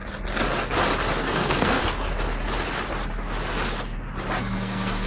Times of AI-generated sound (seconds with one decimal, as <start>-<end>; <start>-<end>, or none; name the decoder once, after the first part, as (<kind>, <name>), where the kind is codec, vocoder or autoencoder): 1.2-1.8 (codec, SNAC); 4.4-5.1